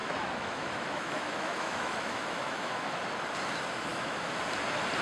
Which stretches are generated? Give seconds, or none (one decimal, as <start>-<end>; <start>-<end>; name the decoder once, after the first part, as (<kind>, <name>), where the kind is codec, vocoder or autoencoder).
0.0-3.0 (autoencoder, DAC-VAE); 3.9-4.4